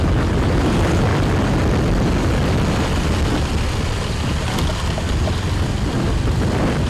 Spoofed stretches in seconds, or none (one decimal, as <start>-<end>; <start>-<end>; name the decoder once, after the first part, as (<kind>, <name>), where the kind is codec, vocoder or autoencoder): 0.0-1.1 (vocoder, BigVGAN v2); 3.8-4.3; 5.0-6.9